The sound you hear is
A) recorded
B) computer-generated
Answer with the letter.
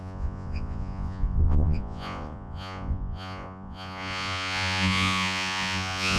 B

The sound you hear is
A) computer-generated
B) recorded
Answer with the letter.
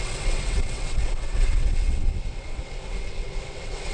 A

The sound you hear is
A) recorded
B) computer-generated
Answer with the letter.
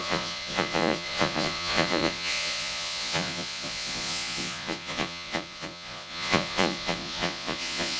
B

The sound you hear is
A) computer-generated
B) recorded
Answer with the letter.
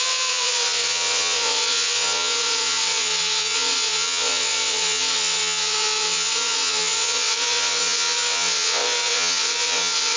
A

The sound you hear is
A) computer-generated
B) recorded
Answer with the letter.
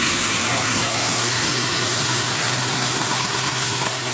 A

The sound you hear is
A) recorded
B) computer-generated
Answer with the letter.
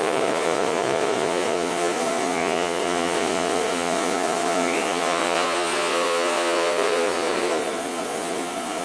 B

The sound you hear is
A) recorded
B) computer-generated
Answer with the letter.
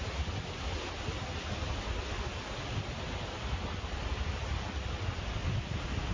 A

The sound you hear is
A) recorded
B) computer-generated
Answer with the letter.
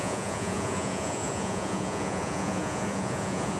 B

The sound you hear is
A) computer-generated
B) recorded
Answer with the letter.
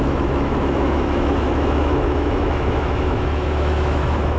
A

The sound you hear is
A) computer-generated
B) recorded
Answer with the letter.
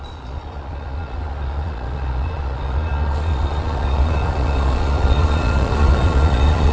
A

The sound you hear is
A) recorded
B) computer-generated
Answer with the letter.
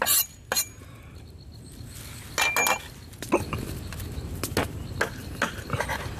A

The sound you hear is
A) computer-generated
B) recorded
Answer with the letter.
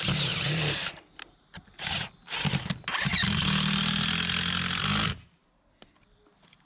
B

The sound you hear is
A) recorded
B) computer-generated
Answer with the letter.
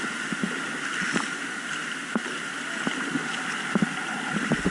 A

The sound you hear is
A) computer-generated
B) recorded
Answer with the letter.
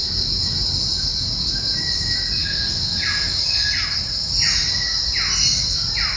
B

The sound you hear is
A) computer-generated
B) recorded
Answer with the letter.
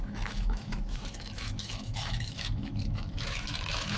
A